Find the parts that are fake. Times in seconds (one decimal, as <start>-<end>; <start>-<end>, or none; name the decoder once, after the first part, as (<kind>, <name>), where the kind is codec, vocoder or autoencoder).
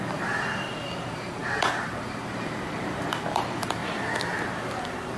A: 0.0-3.8 (vocoder, BigVGAN v2)